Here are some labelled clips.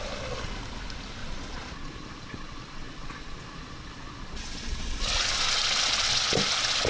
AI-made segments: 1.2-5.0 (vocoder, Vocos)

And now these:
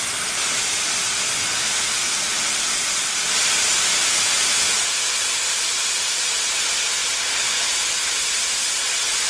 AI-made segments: 1.6-2.1 (autoencoder, DAC-VAE)

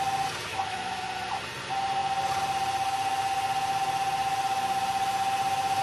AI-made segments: 0.5-1.0 (autoencoder, DAC-VAE)

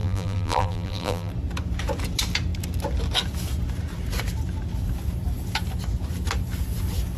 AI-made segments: 0.0-1.3 (vocoder, BigVGAN v2)

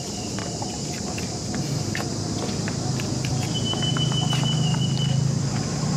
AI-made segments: 0.4-1.2 (vocoder, BigVGAN v2); 3.3-3.9

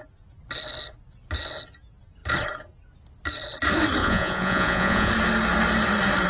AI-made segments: 4.0-5.1 (vocoder, Vocos)